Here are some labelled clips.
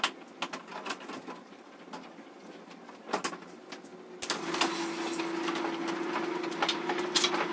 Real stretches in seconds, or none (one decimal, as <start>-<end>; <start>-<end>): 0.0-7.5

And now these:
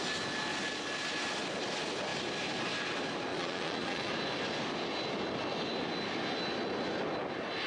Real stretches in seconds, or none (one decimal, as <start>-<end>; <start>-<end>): 0.0-3.3; 4.1-7.7

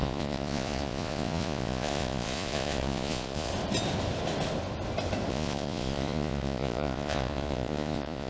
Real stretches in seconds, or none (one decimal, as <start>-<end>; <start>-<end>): 3.5-5.3

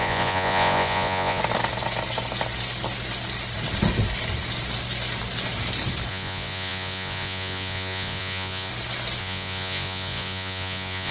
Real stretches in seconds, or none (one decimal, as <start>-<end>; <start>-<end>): 1.4-6.1; 8.7-9.2